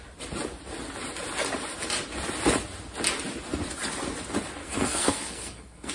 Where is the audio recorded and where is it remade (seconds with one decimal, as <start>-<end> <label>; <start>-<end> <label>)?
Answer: 0.0-4.6 recorded; 4.6-5.9 remade

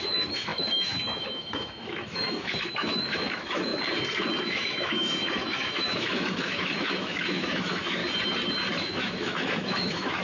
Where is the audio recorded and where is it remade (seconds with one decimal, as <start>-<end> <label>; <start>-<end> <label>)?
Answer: 0.0-3.7 remade; 3.7-4.4 recorded; 4.4-8.0 remade; 8.0-8.7 recorded; 8.7-10.2 remade

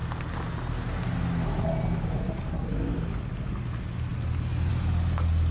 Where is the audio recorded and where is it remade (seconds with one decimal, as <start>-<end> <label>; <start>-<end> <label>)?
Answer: 0.0-5.5 recorded

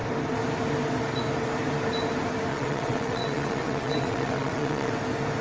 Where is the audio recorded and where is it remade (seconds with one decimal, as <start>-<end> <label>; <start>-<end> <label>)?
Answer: 0.0-2.5 recorded; 2.5-4.9 remade; 4.9-5.4 recorded